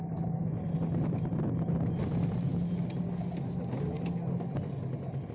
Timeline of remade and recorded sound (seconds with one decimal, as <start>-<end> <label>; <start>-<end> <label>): 0.0-0.4 recorded; 0.4-0.9 remade; 0.9-5.3 recorded